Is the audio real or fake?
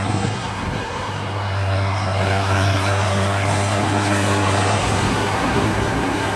fake